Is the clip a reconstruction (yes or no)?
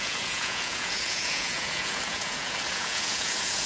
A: yes